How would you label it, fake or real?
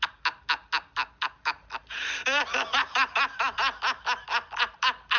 real